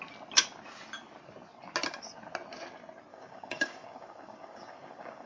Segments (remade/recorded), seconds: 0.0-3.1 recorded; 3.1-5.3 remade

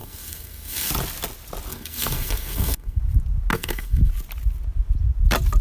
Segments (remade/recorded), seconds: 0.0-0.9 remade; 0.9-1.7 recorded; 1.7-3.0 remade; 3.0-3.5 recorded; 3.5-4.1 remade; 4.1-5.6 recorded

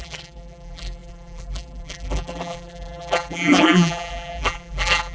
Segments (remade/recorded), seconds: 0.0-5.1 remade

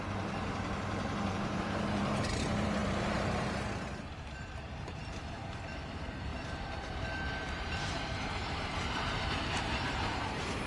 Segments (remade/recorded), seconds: 0.0-10.7 remade

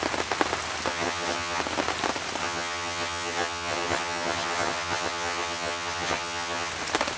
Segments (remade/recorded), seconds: 0.0-0.9 recorded; 0.9-1.6 remade; 1.6-2.4 recorded; 2.4-6.7 remade; 6.7-7.2 recorded

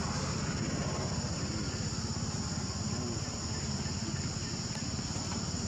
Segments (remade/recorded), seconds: 0.0-5.7 recorded

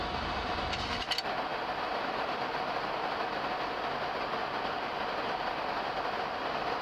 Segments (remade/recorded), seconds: 0.0-6.8 recorded